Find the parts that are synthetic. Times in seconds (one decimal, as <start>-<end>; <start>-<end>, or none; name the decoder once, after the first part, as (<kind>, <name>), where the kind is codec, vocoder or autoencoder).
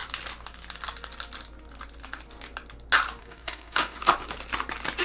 3.2-4.0 (codec, DAC)